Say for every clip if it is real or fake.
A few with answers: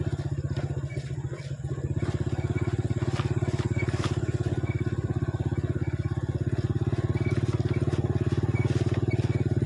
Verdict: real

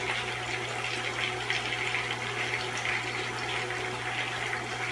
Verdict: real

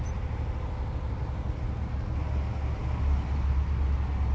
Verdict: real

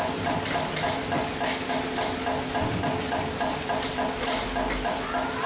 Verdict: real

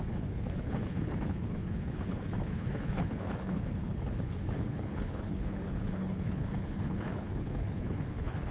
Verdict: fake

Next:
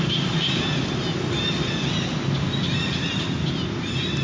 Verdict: real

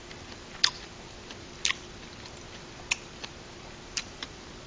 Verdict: fake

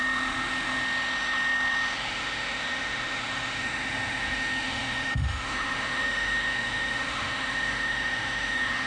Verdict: fake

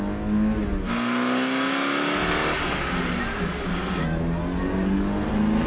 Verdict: real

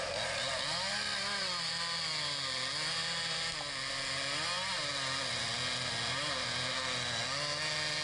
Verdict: real